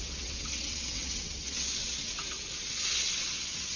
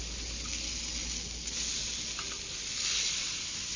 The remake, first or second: first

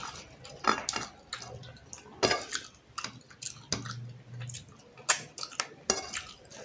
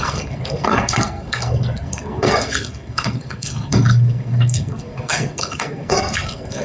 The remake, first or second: second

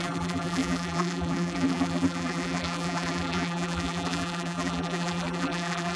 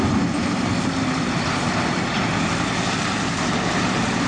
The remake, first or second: first